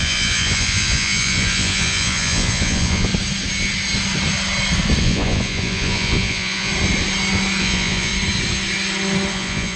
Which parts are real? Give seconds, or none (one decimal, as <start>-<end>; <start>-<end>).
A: 3.1-5.0; 6.7-7.6; 8.1-9.3